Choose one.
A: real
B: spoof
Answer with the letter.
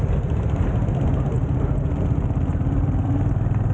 A